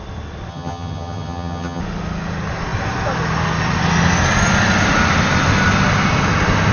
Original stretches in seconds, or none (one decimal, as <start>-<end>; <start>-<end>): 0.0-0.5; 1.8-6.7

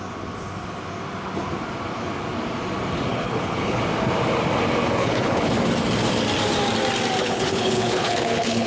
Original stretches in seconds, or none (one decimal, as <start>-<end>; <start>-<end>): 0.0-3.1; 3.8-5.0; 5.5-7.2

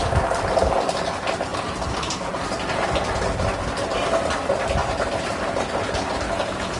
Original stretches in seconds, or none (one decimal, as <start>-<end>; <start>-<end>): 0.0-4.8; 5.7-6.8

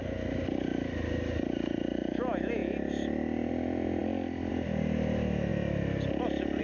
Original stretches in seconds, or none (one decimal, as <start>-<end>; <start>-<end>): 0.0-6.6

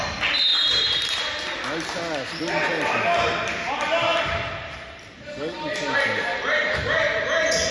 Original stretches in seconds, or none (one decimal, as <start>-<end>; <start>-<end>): 0.0-6.3; 7.0-7.7

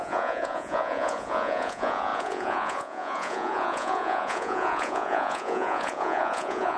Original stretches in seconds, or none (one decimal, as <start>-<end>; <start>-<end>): none